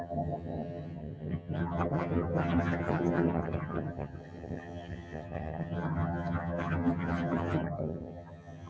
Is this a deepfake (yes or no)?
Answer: yes